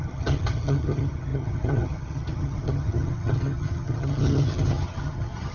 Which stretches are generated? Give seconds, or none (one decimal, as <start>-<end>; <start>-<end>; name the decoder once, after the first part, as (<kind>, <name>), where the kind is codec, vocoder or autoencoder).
0.0-5.5 (vocoder, HiFi-GAN)